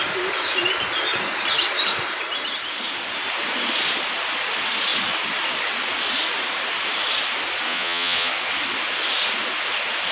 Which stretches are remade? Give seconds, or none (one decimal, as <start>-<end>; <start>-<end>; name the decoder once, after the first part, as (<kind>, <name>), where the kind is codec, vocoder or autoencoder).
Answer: 7.7-8.3 (vocoder, Vocos)